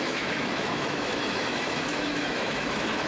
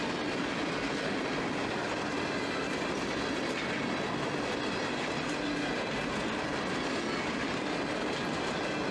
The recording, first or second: second